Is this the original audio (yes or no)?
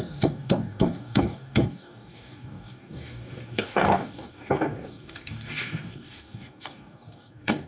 no